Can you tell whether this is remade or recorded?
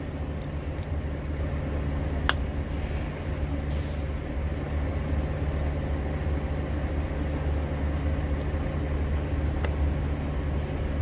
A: recorded